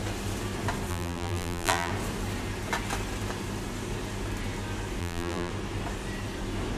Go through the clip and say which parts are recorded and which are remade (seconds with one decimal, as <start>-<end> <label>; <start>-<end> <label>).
0.0-0.9 recorded; 0.9-1.9 remade; 1.9-5.0 recorded; 5.0-5.5 remade; 5.5-6.8 recorded